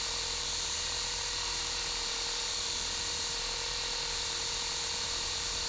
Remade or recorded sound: remade